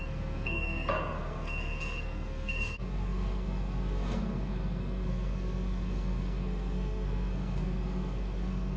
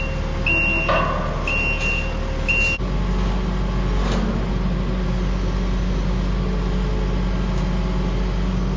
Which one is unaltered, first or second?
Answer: second